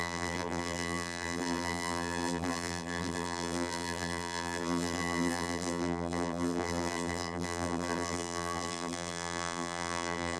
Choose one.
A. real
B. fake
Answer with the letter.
B